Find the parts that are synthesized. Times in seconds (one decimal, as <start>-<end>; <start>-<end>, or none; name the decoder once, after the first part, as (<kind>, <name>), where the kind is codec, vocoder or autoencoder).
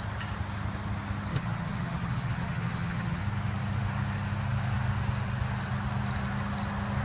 1.3-3.2 (vocoder, HiFi-GAN)